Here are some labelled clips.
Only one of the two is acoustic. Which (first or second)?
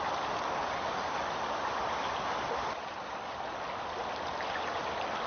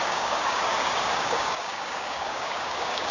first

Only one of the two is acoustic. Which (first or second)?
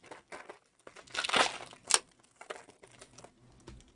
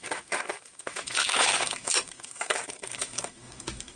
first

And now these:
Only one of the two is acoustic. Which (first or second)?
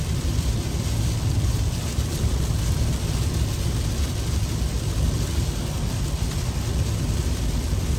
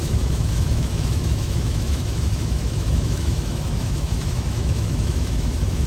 first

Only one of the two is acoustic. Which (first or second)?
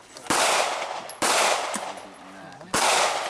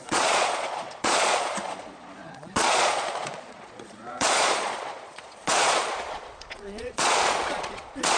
first